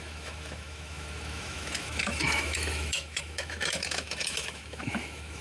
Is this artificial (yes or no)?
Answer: yes